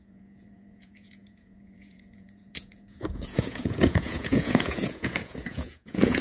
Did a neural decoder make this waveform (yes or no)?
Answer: yes